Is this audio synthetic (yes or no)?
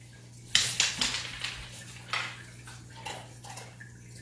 no